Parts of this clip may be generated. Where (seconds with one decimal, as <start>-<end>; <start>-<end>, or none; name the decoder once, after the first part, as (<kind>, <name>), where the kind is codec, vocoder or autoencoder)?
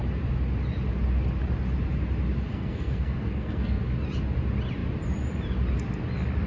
2.5-3.8 (codec, SNAC)